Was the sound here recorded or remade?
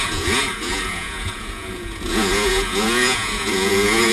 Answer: remade